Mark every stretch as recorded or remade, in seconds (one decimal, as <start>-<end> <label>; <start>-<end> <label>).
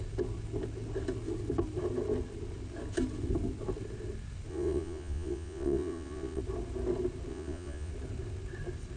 0.0-4.5 recorded; 4.5-6.4 remade; 6.4-7.3 recorded; 7.3-7.9 remade; 7.9-9.0 recorded